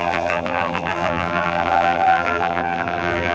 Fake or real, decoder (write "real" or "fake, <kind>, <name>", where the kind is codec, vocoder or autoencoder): fake, vocoder, BigVGAN v2